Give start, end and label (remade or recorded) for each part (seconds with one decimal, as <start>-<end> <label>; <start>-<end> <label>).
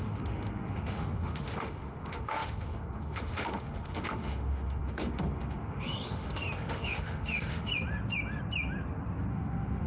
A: 0.0-7.7 remade; 7.7-9.3 recorded; 9.3-9.9 remade